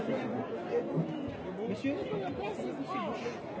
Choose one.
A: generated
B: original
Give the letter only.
B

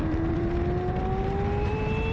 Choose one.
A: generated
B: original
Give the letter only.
A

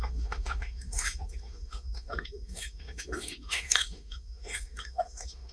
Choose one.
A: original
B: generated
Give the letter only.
B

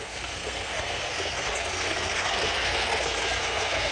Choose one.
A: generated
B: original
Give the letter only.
A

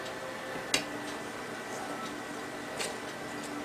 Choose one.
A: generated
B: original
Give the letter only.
B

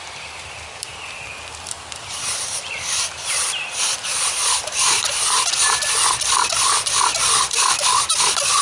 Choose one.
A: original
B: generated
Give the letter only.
A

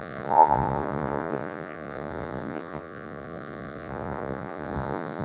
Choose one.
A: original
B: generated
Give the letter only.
B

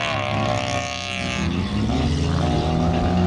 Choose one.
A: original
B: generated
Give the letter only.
A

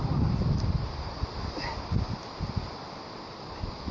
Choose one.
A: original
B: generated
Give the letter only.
A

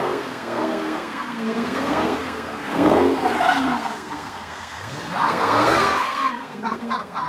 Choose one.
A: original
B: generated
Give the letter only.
B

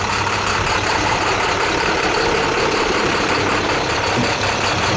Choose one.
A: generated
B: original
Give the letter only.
A